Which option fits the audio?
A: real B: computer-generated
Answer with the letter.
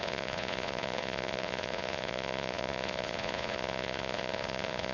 B